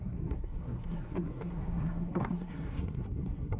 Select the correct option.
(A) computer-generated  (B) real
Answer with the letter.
A